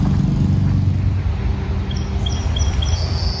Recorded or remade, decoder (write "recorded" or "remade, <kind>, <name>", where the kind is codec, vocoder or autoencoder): recorded